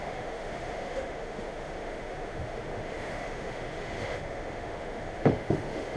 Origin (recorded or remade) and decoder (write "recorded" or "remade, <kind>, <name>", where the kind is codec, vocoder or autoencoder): remade, autoencoder, DAC-VAE